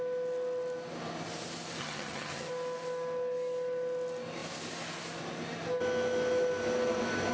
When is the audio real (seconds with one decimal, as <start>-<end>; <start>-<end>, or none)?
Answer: 0.0-1.8; 2.5-7.3